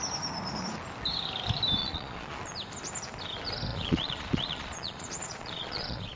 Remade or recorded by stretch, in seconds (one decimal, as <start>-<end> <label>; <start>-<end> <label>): 0.0-1.8 recorded; 1.8-2.4 remade; 2.4-3.7 recorded; 3.7-6.2 remade